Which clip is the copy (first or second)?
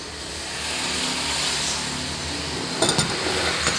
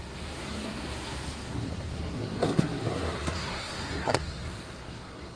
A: second